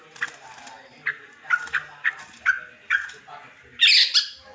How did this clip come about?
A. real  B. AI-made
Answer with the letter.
A